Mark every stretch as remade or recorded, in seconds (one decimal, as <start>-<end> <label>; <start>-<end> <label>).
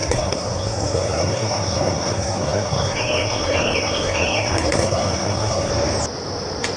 0.0-5.7 remade; 5.7-6.8 recorded